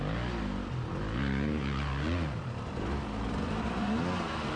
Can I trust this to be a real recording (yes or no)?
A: yes